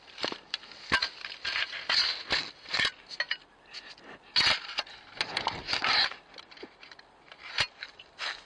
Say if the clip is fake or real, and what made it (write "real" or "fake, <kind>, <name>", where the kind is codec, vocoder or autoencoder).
real